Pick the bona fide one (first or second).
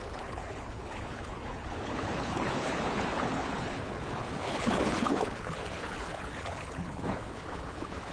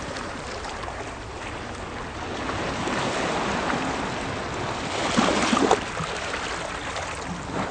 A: second